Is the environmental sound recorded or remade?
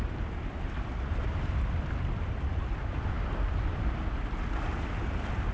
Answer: recorded